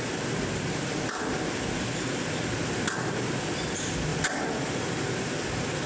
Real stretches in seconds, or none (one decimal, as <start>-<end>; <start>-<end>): 0.0-5.9